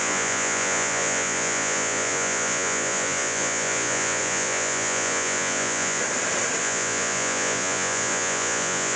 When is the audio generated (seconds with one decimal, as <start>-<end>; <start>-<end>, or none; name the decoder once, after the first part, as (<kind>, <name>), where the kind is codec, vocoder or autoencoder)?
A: 0.0-6.0 (vocoder, Vocos); 6.6-9.0